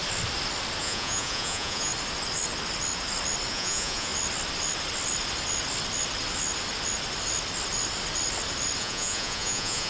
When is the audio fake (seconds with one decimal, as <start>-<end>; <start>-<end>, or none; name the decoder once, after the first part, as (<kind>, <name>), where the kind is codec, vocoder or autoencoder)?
0.8-1.9 (vocoder, Vocos); 3.5-4.1; 8.8-9.9